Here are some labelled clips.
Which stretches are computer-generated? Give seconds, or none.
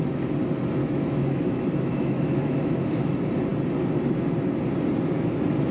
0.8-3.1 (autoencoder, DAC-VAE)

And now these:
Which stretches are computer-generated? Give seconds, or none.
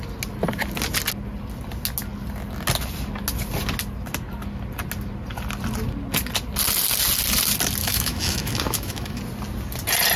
7.8-9.2 (autoencoder, DAC-VAE)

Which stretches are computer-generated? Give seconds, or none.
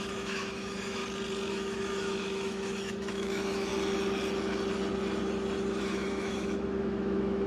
0.0-1.0 (autoencoder, DAC-VAE); 1.5-3.7; 5.8-7.5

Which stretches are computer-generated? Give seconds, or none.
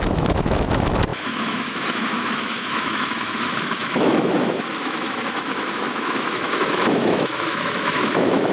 0.0-8.5 (autoencoder, DAC-VAE)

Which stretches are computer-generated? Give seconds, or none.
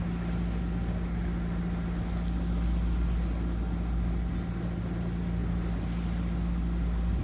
none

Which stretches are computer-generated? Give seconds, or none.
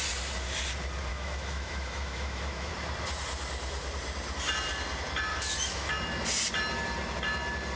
1.1-2.7 (autoencoder, DAC-VAE); 5.3-5.9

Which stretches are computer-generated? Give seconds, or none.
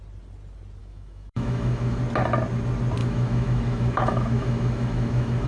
0.8-2.0 (autoencoder, DAC-VAE); 3.0-5.5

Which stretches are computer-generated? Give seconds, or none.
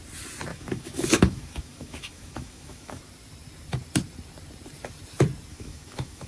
0.5-3.0 (autoencoder, DAC-VAE); 5.5-6.3